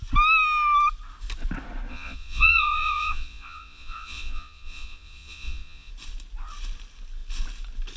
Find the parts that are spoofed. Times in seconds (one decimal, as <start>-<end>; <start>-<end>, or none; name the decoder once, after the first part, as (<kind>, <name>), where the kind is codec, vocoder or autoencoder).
1.9-5.9 (vocoder, Vocos)